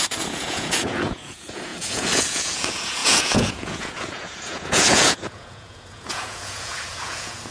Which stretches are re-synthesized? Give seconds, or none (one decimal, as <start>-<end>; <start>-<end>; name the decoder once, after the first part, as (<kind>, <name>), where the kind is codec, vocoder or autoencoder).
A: 0.0-7.5 (vocoder, Vocos)